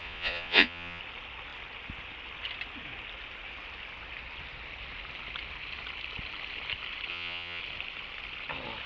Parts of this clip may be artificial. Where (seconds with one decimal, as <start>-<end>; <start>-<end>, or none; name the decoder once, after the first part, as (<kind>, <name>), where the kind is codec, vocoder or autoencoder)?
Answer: 0.0-1.0 (vocoder, Vocos); 7.1-7.6